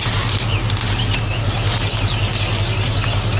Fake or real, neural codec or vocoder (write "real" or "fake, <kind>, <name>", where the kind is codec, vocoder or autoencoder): real